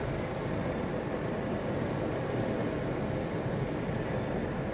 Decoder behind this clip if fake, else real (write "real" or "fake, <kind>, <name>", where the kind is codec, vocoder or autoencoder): real